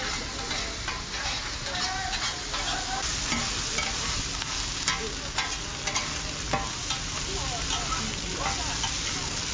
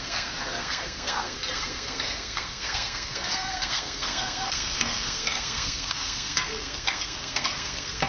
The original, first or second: first